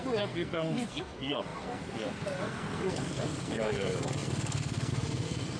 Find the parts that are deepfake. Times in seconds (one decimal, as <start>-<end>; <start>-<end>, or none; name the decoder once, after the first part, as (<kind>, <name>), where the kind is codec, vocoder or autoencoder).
0.0-5.6 (codec, SNAC)

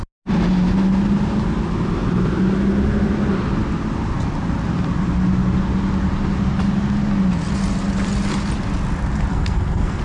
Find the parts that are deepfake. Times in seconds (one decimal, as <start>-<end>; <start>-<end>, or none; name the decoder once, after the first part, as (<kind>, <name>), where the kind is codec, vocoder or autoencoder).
9.3-10.0 (codec, SNAC)

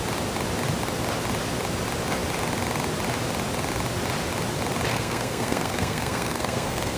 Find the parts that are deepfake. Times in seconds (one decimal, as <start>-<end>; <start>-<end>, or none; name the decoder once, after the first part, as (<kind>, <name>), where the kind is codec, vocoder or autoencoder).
4.9-7.0 (codec, SNAC)